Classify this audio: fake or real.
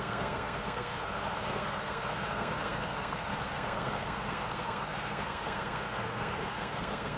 fake